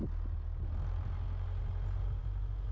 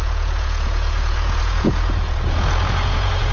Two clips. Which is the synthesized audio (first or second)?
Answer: second